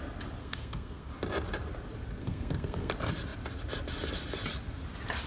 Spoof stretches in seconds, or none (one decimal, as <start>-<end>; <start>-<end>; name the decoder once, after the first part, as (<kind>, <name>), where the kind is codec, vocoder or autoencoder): 0.4-1.1 (codec, SNAC); 2.2-2.9